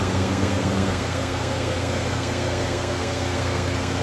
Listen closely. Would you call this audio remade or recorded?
remade